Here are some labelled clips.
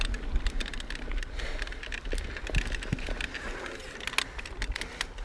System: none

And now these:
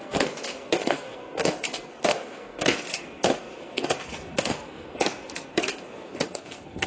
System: codec, SNAC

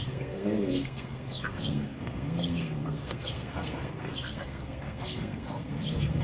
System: codec, SNAC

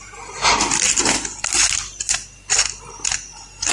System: none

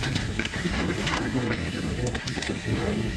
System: codec, SNAC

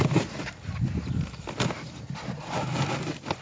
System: none